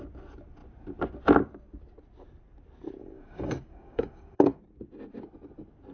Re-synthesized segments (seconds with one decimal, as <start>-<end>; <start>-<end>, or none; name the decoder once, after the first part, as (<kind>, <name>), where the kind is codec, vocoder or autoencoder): 3.0-4.6 (codec, DAC)